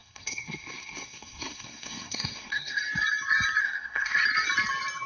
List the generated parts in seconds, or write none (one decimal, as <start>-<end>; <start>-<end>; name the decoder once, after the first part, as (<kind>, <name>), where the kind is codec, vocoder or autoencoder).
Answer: 0.0-2.8 (codec, SNAC); 3.6-4.2

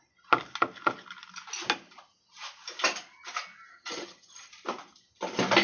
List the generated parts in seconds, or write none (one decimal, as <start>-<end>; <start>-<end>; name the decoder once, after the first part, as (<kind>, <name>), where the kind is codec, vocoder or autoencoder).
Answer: 3.7-4.5 (vocoder, HiFi-GAN)

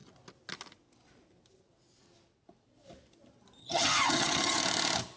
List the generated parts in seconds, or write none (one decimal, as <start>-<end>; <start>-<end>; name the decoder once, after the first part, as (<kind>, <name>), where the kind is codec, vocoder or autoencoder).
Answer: 3.6-4.6 (vocoder, HiFi-GAN)

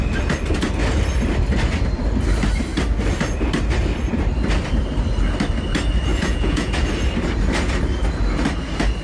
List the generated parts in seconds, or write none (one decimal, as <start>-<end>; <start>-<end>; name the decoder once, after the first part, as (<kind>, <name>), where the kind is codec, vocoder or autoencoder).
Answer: 6.1-6.7 (vocoder, Vocos)